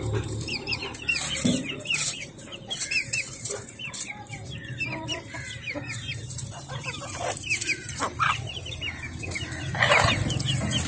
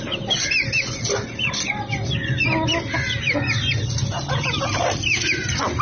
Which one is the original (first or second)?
second